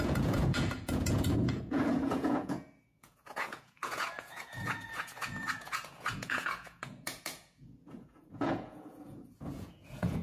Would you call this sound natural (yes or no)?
no